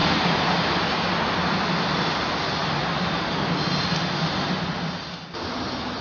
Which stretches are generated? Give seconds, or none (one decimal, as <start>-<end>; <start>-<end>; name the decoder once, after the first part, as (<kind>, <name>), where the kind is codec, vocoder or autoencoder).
none